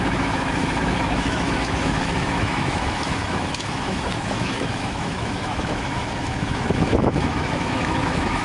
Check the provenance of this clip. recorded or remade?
remade